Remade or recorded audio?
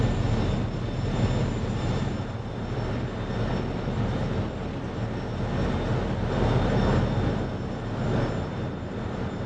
recorded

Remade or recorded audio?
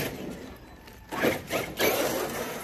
recorded